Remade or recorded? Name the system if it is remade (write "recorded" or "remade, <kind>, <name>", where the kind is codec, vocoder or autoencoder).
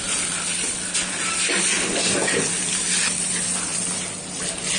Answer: recorded